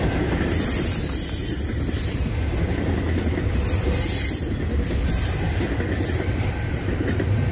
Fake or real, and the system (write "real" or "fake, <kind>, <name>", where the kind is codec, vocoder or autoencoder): real